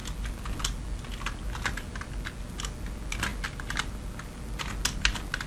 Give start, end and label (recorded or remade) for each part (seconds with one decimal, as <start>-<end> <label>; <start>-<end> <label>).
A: 0.0-5.5 recorded